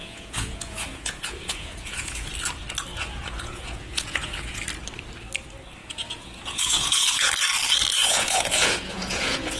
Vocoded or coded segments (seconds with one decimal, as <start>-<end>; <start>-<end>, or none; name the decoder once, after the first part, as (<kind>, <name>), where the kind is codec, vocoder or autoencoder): 0.0-2.3 (vocoder, Vocos); 2.9-4.6; 5.8-7.3; 8.0-9.6